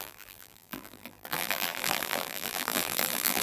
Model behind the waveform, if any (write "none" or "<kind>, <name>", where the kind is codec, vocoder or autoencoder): vocoder, BigVGAN v2